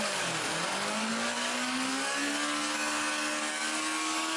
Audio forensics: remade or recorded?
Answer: remade